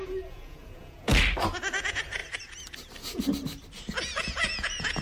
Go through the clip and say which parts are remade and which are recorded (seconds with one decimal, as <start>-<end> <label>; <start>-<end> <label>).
0.0-1.1 remade; 1.1-1.8 recorded; 1.8-2.2 remade; 2.2-4.2 recorded; 4.2-5.0 remade